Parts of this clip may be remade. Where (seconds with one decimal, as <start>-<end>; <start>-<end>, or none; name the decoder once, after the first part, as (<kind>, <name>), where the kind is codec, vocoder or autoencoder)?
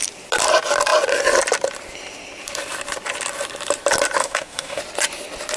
4.2-4.8 (autoencoder, DAC-VAE)